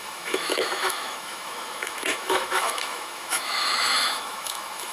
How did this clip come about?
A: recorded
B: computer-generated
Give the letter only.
B